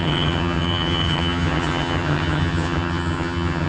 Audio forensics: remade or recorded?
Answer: remade